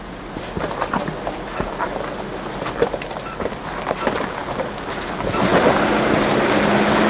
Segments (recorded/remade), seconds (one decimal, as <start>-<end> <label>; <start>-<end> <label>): 0.0-7.1 recorded